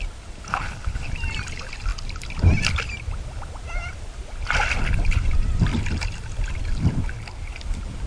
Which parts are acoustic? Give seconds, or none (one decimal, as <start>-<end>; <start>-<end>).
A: 0.0-0.5; 1.1-8.1